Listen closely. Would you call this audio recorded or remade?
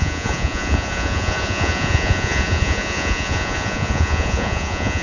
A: remade